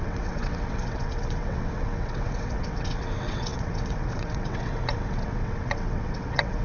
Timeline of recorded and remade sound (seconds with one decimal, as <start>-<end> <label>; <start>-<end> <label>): 0.0-6.6 remade